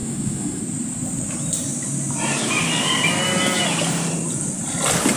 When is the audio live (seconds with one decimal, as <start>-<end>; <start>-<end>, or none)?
0.6-5.2